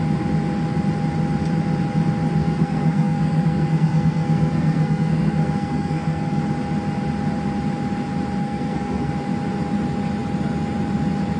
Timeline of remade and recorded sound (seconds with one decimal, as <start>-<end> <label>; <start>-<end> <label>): 0.0-2.4 recorded; 2.4-6.4 remade; 6.4-8.4 recorded; 8.4-9.1 remade; 9.1-11.4 recorded